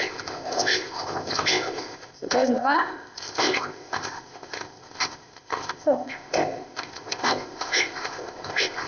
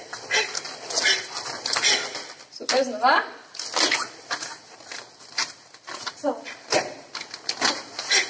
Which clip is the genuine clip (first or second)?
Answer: second